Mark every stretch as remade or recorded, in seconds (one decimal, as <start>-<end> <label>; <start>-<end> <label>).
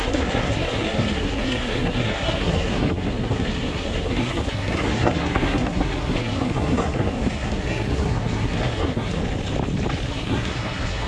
0.0-9.2 remade; 9.2-10.1 recorded; 10.1-11.1 remade